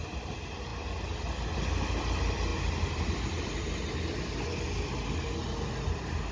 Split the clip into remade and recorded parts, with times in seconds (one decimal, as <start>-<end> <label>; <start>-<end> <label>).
0.0-6.3 recorded